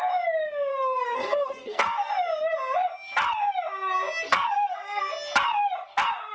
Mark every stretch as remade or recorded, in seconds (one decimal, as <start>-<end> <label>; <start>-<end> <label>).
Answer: 0.0-0.7 recorded; 0.7-2.1 remade; 2.1-4.3 recorded; 4.3-5.0 remade; 5.0-6.3 recorded